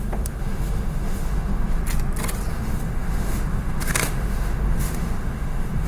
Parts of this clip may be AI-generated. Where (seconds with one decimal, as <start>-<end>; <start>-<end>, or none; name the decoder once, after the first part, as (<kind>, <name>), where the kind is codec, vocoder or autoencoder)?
0.0-1.8 (autoencoder, DAC-VAE); 2.5-5.9